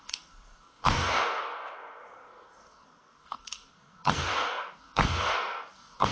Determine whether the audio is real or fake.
fake